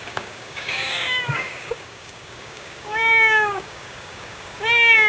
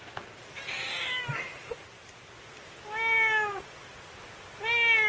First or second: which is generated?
first